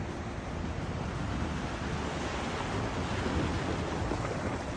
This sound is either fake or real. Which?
real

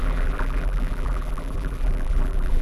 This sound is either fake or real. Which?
fake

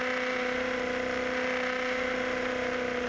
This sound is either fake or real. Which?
real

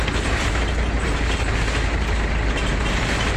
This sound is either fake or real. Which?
real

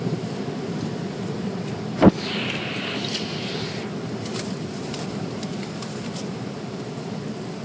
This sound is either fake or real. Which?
fake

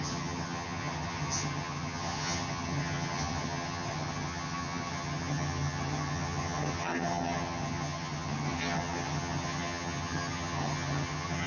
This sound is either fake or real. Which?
fake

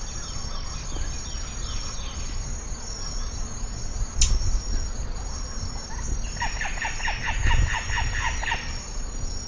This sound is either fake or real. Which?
real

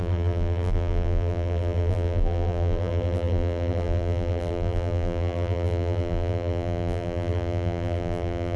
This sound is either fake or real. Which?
fake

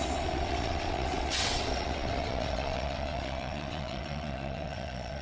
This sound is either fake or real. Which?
fake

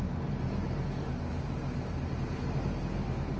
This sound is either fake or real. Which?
real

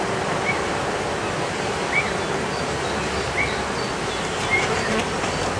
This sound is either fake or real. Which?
real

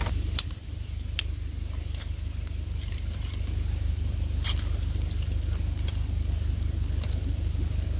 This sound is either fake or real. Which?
real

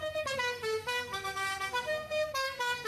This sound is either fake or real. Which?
fake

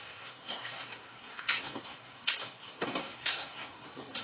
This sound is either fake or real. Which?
fake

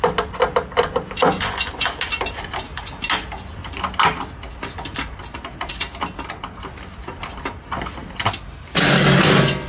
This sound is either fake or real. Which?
real